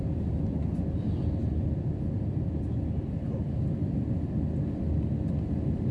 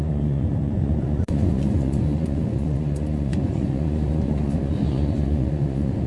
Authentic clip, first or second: first